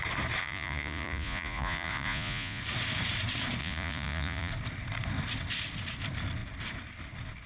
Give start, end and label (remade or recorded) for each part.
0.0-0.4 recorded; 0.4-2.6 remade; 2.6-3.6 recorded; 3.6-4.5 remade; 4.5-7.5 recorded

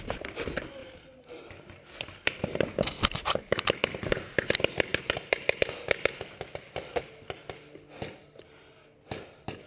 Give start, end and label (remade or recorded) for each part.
0.0-9.7 recorded

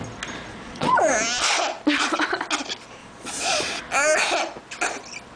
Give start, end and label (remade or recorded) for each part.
0.0-0.5 recorded; 0.5-1.1 remade; 1.1-3.0 recorded; 3.0-3.8 remade; 3.8-5.4 recorded

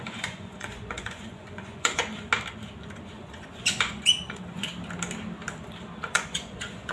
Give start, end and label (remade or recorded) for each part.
0.0-2.0 remade; 2.0-3.0 recorded; 3.0-4.7 remade; 4.7-6.0 recorded; 6.0-6.9 remade

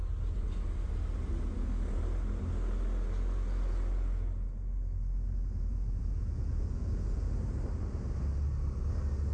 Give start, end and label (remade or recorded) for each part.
0.0-6.0 recorded; 6.0-7.3 remade; 7.3-9.3 recorded